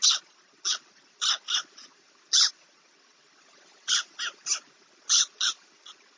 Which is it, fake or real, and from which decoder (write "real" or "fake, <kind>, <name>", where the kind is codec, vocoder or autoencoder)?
real